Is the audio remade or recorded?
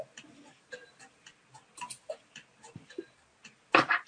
recorded